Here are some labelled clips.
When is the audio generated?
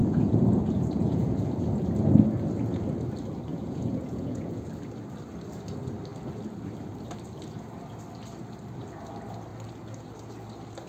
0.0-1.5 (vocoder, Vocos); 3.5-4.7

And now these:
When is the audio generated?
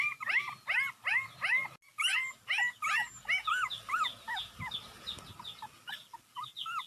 none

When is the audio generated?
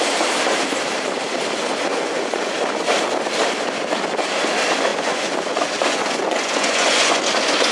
1.9-2.5 (vocoder, Vocos); 4.9-7.2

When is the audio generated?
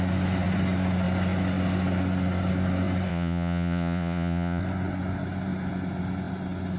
3.1-4.6 (vocoder, Vocos)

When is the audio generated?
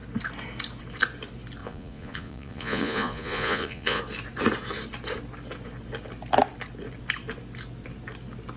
1.6-4.0 (vocoder, Vocos)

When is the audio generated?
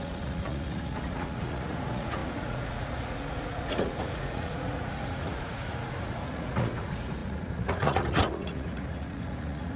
0.0-9.8 (vocoder, Vocos)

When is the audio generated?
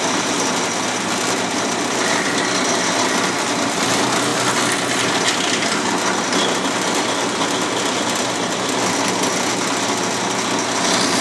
none